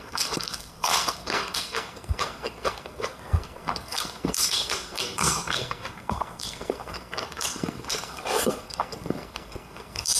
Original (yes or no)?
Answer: no